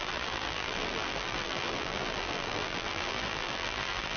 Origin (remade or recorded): remade